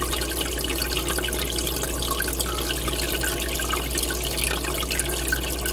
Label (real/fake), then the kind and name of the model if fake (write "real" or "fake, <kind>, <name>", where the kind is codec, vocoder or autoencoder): real